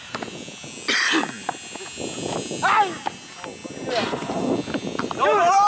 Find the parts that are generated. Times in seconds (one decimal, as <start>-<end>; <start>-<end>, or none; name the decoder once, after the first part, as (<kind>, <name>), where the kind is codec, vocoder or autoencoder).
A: none